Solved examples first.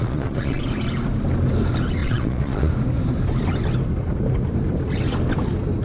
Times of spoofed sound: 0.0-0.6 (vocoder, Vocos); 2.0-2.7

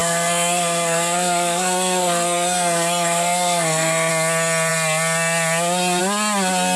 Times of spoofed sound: 0.0-4.1 (codec, SNAC)